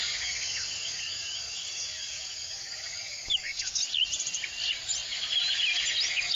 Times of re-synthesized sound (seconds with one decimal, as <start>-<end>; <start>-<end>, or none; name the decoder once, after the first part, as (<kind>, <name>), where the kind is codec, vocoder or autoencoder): 0.0-3.8 (codec, DAC)